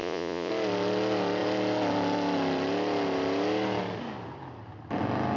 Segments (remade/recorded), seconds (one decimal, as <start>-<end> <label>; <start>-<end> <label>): 0.0-0.5 remade; 0.5-5.4 recorded